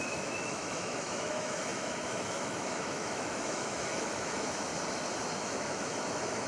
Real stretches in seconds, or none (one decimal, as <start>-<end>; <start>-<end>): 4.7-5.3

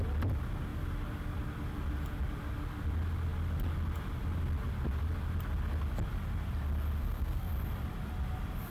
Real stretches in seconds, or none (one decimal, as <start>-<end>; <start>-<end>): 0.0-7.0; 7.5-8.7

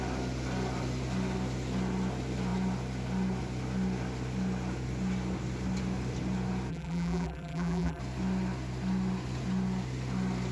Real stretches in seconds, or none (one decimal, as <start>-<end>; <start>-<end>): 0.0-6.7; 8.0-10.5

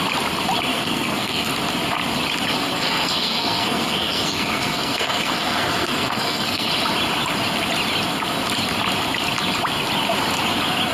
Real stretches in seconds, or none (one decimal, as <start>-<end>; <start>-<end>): 0.0-0.7; 1.5-2.5; 6.7-10.9